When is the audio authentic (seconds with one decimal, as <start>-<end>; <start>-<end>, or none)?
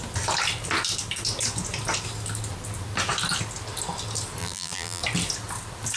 0.0-4.4; 5.0-6.0